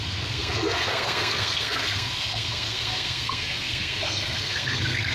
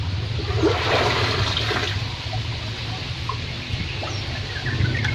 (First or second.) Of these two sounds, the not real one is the first